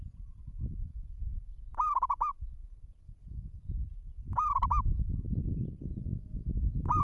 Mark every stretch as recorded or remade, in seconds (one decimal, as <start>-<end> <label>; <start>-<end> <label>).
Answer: 0.0-7.0 recorded